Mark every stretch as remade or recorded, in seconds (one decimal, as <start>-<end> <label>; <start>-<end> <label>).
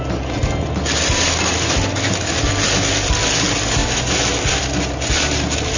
0.0-5.8 recorded